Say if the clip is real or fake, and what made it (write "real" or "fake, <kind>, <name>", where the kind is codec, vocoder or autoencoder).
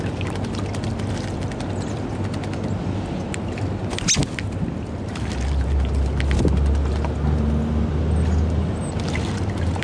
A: real